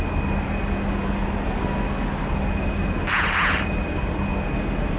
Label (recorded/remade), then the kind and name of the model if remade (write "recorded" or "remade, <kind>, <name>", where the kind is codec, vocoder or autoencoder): recorded